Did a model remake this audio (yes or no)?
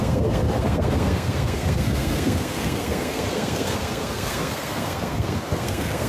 yes